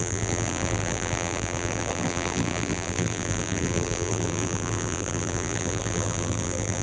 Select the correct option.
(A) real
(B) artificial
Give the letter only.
B